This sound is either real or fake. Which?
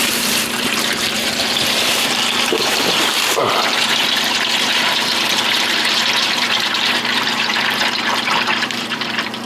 fake